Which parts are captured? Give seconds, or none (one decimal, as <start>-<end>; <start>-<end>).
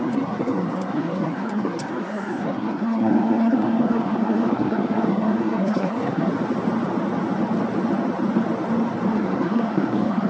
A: 6.3-9.1